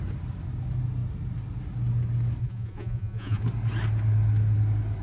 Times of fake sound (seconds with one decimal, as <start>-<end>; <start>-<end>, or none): 2.4-3.4